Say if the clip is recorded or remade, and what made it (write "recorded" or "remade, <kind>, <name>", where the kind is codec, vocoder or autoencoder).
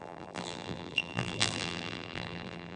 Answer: remade, vocoder, BigVGAN v2